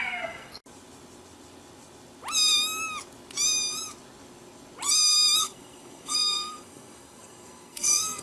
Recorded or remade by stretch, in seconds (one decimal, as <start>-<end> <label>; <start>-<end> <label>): 0.0-0.5 remade; 0.5-5.4 recorded; 5.4-8.2 remade